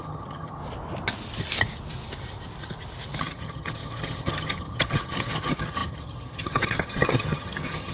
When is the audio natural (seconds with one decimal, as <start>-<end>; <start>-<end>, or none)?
0.6-3.2